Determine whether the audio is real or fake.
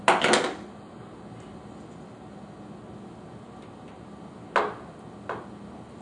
real